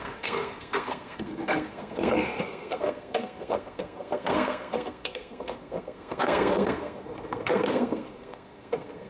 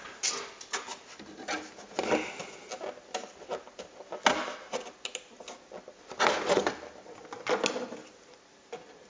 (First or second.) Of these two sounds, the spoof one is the first